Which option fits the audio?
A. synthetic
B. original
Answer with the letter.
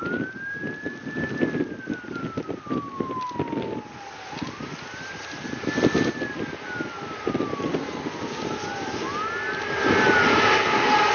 B